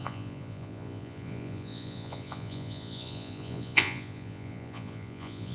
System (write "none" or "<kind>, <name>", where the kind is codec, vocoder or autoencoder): vocoder, Vocos